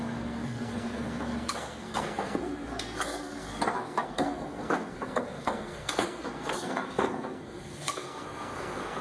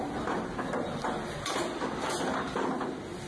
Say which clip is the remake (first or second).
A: first